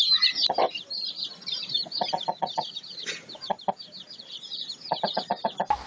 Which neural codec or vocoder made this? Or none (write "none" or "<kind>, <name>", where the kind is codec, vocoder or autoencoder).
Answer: none